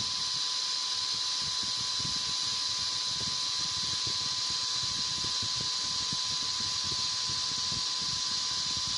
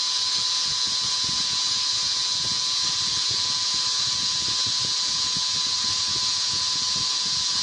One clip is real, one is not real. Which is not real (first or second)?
second